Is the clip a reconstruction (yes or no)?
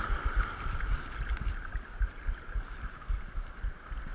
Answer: no